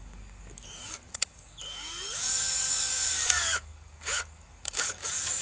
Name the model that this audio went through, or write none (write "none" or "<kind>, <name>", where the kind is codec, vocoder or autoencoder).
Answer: codec, DAC